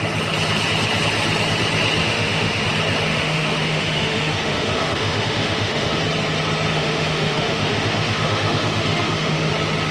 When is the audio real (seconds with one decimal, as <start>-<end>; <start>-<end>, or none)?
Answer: 0.0-2.0; 2.7-3.1; 6.0-6.7; 9.5-9.9